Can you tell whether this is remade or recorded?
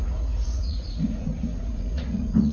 remade